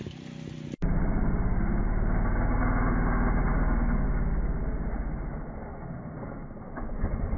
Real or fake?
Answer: real